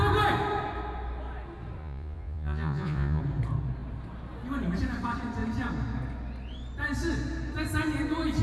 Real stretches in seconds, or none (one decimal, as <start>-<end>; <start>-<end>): 0.0-1.8; 3.2-8.4